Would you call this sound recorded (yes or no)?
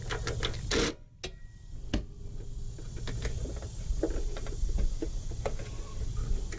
yes